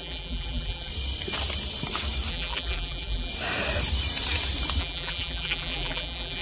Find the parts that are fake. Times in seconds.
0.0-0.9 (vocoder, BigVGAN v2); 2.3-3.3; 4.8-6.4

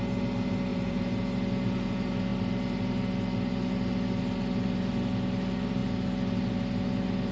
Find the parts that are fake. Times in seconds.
0.7-1.2 (vocoder, BigVGAN v2)